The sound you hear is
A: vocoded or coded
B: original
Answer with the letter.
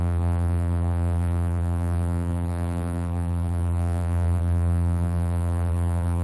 A